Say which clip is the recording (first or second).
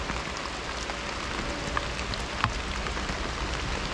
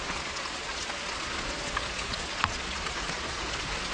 first